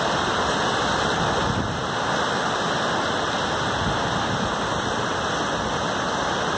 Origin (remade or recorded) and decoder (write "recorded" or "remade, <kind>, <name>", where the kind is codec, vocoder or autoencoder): recorded